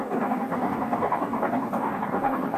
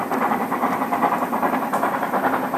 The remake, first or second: first